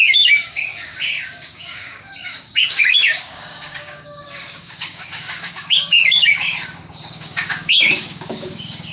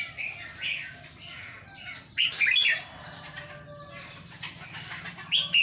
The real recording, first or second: second